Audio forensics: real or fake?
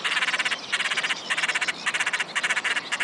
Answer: real